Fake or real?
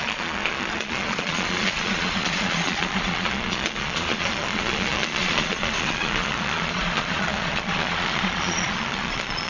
fake